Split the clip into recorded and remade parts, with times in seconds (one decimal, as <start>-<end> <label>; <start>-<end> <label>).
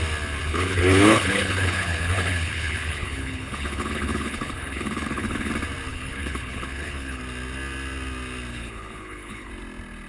0.0-0.4 recorded; 0.4-5.5 remade; 5.5-5.9 recorded; 5.9-7.2 remade; 7.2-8.5 recorded; 8.5-9.5 remade; 9.5-10.1 recorded